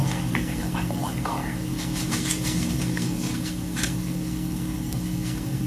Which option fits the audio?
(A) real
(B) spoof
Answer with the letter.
B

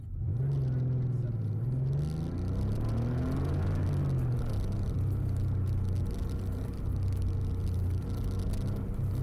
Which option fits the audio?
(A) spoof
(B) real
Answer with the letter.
B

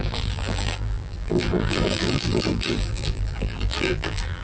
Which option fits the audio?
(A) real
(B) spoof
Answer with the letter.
B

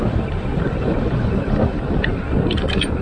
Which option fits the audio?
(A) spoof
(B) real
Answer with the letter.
B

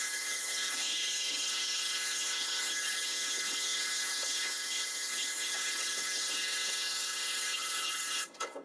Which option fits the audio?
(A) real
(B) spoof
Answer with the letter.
B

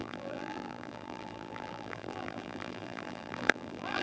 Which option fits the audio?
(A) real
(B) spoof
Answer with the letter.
B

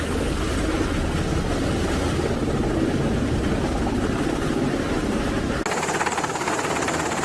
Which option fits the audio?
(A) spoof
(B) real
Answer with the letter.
B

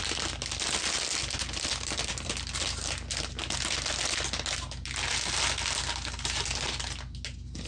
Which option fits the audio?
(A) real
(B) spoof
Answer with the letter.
A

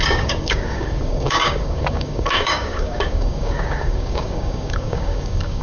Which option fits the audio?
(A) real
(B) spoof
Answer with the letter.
B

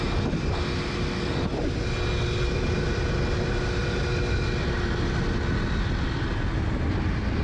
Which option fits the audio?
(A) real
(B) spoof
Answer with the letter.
A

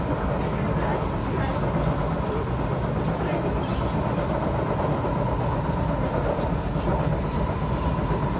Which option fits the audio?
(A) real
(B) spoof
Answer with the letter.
A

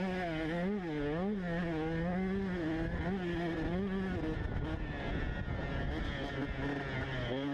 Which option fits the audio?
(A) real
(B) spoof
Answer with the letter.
A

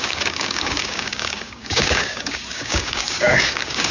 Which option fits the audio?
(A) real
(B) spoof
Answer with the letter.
B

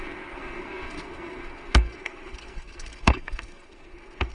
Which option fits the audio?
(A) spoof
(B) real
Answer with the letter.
A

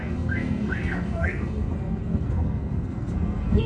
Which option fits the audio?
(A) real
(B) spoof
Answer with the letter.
B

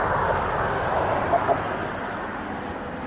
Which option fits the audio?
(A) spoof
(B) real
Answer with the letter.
B